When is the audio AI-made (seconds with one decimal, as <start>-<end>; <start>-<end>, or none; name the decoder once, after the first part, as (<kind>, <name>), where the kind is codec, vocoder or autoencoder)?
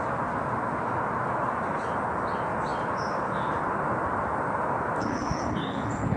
5.0-6.2 (codec, HILCodec)